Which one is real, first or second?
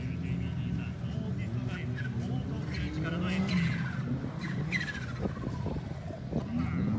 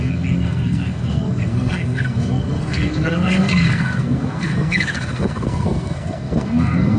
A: first